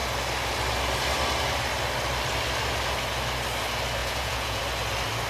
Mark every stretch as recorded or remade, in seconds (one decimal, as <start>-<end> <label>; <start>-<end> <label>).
0.0-4.0 recorded; 4.0-4.6 remade; 4.6-5.3 recorded